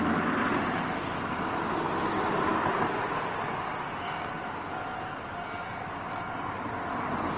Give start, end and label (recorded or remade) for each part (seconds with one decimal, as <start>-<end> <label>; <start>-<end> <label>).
0.0-7.4 recorded